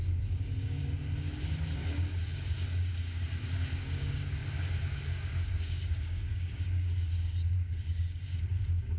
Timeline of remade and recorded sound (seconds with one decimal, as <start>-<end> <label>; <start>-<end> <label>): 0.0-0.8 remade; 0.8-1.8 recorded; 1.8-9.0 remade